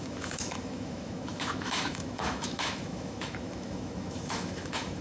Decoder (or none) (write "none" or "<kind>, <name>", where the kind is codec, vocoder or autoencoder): autoencoder, DAC-VAE